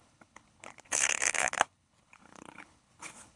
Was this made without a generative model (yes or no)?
no